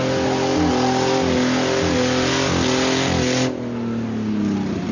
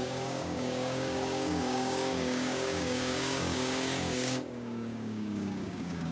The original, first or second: first